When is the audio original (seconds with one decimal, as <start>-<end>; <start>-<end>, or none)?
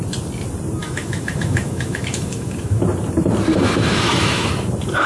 0.0-0.8; 2.8-3.5; 4.5-5.1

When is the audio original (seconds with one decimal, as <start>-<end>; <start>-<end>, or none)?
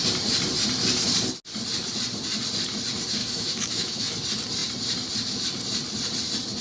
0.0-3.2; 4.1-6.6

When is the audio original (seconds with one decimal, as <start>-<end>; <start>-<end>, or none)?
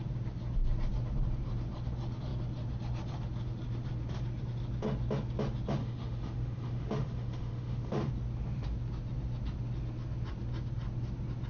0.0-5.8; 8.1-11.5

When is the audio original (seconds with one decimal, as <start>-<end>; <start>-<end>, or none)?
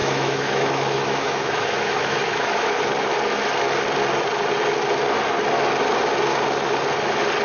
2.8-7.4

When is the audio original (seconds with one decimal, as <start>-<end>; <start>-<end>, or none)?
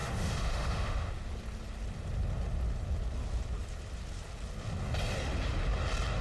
1.1-6.2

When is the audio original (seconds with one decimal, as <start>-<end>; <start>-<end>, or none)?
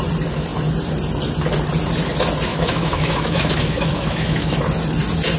0.0-2.5; 4.6-5.4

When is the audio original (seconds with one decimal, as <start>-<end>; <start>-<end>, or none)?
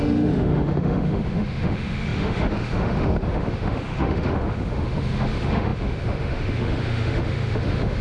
none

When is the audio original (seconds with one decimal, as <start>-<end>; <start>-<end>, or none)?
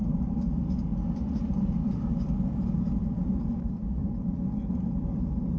0.0-5.6